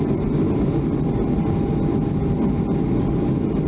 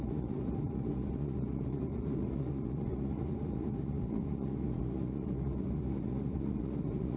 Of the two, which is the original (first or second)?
first